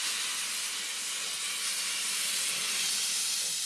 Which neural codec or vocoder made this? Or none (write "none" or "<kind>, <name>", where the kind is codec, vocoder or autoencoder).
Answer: none